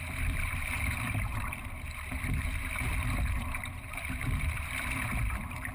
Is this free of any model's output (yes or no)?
no